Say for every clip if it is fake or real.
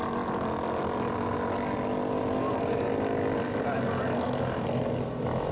real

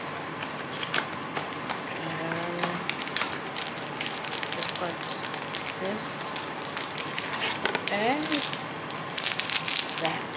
real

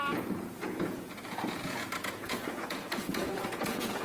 fake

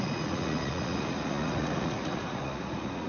fake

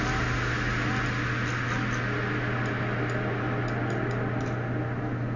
real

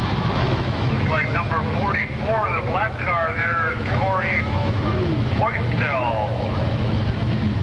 fake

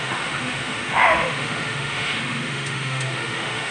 fake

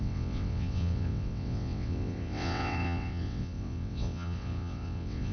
fake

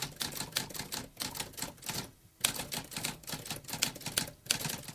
real